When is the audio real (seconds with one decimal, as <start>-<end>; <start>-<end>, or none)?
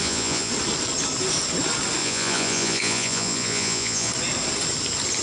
0.5-2.0; 4.1-5.2